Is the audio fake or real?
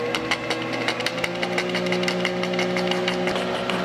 real